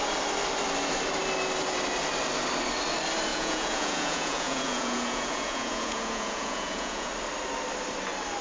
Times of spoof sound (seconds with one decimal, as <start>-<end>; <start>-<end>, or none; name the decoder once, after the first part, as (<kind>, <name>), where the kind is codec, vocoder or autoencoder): 3.3-7.1 (vocoder, Vocos)